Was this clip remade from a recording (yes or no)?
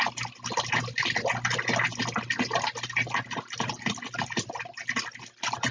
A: no